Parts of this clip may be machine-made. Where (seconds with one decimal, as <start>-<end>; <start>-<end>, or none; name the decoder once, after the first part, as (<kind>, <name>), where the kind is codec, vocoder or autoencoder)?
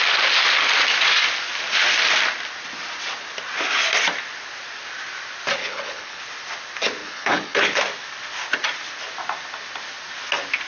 5.6-6.2 (codec, HILCodec); 7.0-7.8